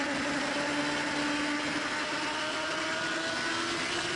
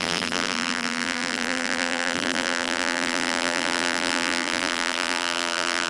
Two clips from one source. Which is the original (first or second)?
first